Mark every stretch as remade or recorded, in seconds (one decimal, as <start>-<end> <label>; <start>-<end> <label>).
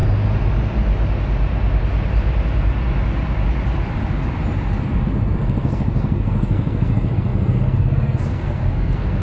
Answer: 0.0-5.1 recorded; 5.1-9.2 remade